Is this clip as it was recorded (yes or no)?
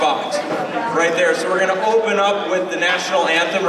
yes